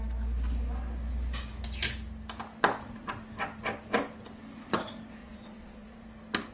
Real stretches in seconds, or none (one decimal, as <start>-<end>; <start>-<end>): 0.0-5.2; 6.1-6.5

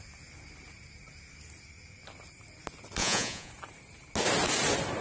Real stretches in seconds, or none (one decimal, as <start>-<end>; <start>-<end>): 0.0-3.0; 3.5-5.0

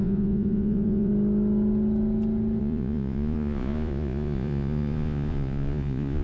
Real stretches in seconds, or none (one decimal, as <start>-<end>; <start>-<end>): 1.1-2.6

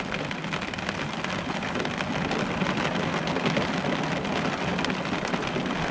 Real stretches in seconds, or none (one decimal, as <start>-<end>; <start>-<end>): 0.0-5.9

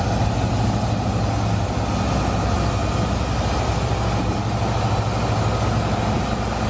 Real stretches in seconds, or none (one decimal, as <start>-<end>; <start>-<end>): 0.0-6.7

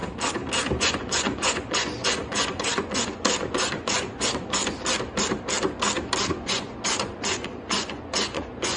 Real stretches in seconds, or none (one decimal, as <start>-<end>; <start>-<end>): 0.0-0.8; 4.6-6.3